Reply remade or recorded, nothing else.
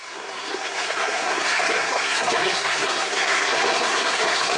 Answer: remade